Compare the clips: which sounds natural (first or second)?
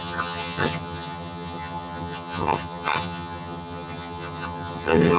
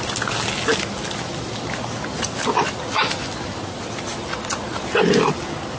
second